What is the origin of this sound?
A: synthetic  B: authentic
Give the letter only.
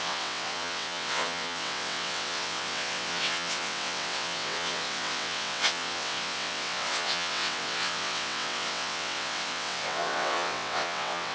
A